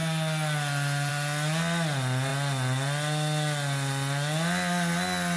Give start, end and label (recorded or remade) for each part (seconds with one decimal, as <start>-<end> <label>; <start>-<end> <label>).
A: 0.0-5.4 recorded